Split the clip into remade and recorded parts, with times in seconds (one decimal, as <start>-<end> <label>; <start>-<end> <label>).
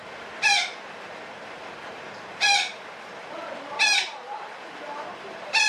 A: 0.0-5.7 remade